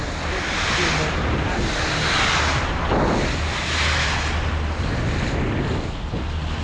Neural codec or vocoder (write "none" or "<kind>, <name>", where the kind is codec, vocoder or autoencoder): none